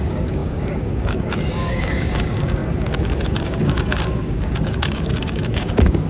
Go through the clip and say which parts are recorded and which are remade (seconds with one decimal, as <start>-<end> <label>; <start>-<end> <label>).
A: 0.0-6.1 remade